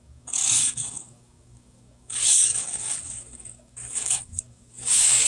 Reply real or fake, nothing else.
fake